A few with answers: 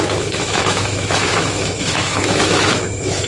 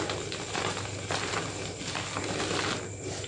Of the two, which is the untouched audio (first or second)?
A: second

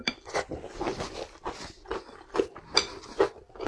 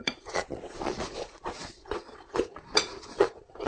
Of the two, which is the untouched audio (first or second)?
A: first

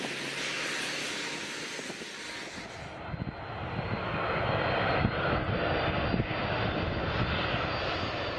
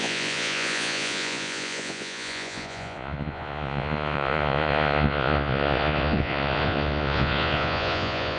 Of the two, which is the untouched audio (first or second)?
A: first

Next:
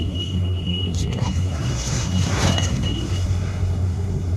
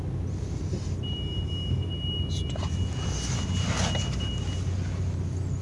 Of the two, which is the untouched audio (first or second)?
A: second